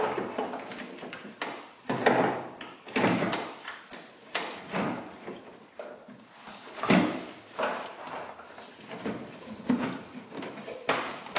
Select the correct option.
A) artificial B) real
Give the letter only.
B